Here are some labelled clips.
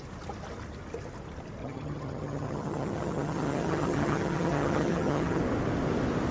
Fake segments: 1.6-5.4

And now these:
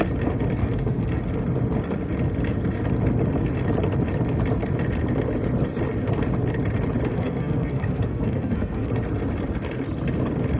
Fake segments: 0.6-1.2; 7.1-8.9

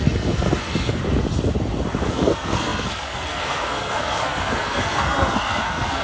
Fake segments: 0.0-1.0; 2.1-6.0

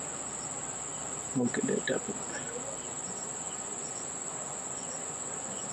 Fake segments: 3.0-5.7

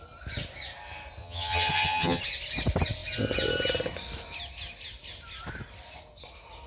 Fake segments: 1.2-2.2

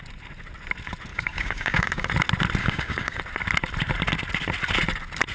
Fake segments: 1.1-2.1; 2.6-3.2

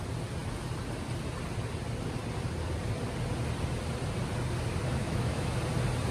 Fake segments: 5.0-5.5